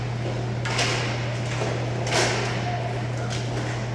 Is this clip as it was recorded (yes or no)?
yes